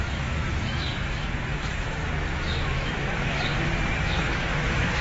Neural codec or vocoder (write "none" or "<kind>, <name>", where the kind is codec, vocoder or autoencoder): autoencoder, DAC-VAE